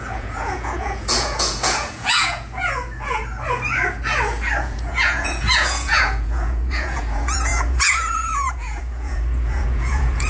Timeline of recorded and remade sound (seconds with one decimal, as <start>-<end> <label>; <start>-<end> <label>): 0.0-3.2 remade; 3.2-4.6 recorded; 4.6-10.3 remade